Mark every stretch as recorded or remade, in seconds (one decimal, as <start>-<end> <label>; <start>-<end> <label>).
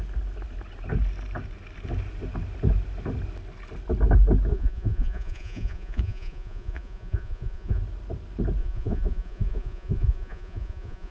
0.0-4.5 recorded; 4.5-7.8 remade; 7.8-8.6 recorded; 8.6-11.1 remade